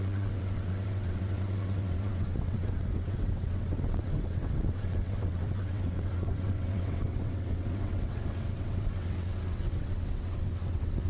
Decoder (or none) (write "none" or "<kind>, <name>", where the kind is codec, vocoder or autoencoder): vocoder, WaveNeXt